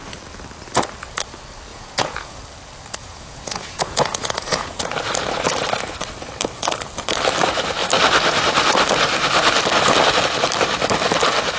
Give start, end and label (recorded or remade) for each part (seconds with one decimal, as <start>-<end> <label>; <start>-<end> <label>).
0.0-1.7 recorded; 1.7-2.4 remade; 2.4-3.0 recorded; 3.0-4.9 remade; 4.9-11.6 recorded